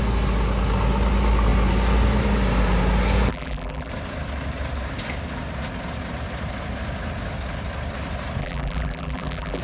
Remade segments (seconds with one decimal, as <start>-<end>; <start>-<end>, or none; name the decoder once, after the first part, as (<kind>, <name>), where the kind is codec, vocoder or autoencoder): 3.3-3.9 (vocoder, BigVGAN v2); 8.4-9.6